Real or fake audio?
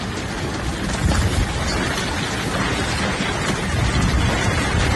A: real